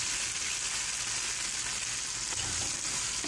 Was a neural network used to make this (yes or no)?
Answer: no